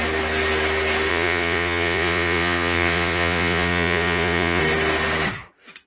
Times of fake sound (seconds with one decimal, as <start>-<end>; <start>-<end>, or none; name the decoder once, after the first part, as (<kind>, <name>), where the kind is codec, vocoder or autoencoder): 1.1-4.6 (vocoder, Vocos)